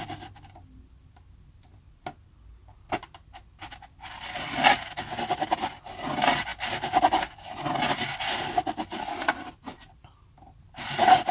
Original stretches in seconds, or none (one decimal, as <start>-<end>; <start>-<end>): 0.0-11.3